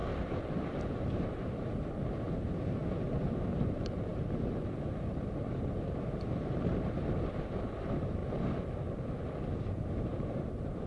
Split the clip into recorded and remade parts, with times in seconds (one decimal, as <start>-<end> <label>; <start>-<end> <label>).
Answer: 0.0-0.8 recorded; 0.8-8.2 remade; 8.2-9.4 recorded; 9.4-10.9 remade